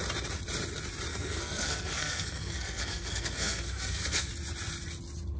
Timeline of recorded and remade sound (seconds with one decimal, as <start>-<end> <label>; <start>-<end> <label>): 0.0-1.1 recorded; 1.1-4.3 remade; 4.3-5.4 recorded